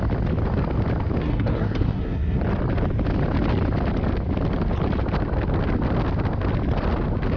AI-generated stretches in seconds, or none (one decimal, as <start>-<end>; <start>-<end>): 1.2-2.4